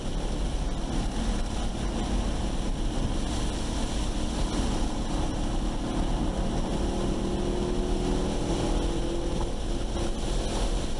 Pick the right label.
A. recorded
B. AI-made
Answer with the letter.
A